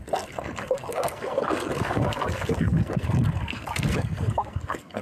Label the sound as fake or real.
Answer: fake